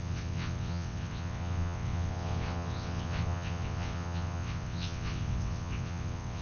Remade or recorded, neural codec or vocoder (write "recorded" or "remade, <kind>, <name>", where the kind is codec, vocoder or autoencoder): remade, vocoder, WaveNeXt